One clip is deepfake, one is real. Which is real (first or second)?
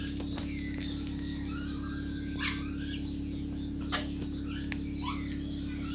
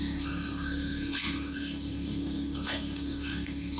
first